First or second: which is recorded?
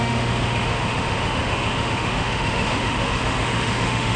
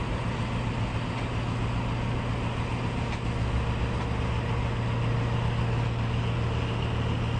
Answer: second